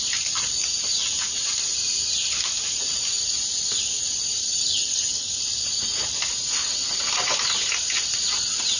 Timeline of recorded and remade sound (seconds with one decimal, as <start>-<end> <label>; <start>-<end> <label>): 0.0-4.4 recorded; 4.4-5.4 remade; 5.4-8.8 recorded